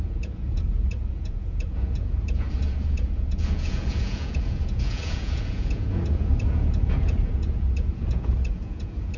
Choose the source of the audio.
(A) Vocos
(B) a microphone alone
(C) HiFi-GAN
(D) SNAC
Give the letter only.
A